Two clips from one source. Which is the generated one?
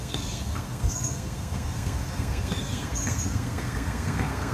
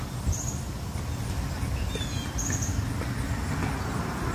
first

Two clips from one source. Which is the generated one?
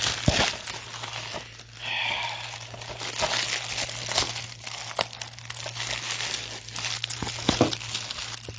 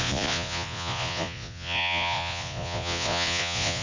second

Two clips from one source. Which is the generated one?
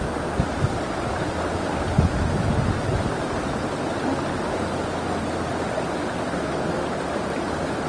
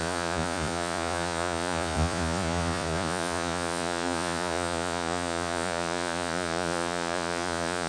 second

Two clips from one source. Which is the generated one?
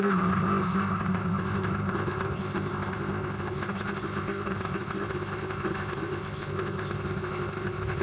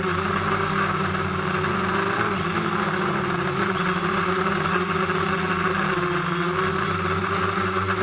first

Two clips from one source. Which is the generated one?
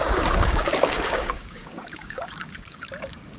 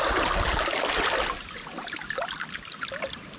first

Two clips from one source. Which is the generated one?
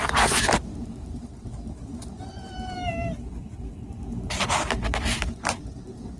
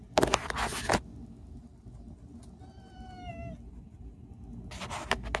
first